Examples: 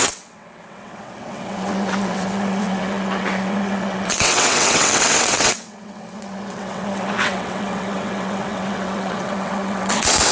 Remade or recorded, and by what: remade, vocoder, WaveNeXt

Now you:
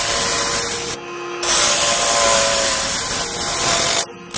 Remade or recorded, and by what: recorded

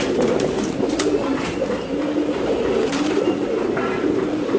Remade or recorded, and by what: remade, vocoder, BigVGAN v2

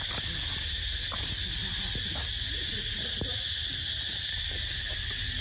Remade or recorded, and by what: recorded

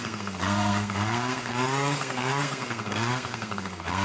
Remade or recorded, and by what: remade, codec, SNAC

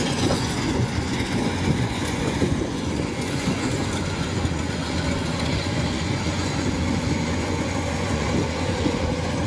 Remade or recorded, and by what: remade, vocoder, Vocos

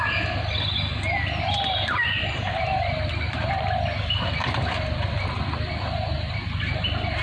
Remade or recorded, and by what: recorded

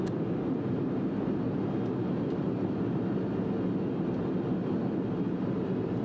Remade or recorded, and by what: recorded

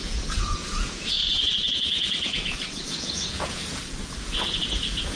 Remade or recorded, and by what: remade, vocoder, Vocos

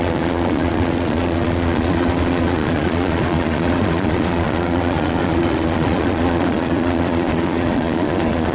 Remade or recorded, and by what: remade, vocoder, Vocos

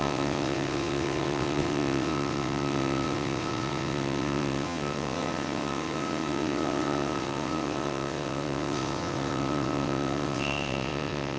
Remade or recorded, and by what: remade, vocoder, WaveNeXt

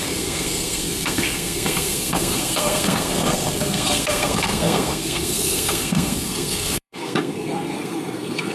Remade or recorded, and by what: remade, codec, SNAC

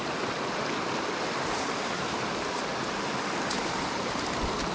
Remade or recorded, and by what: recorded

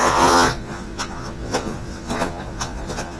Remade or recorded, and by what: remade, vocoder, Vocos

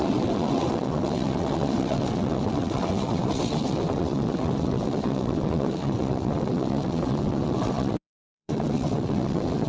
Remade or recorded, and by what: remade, vocoder, WaveNeXt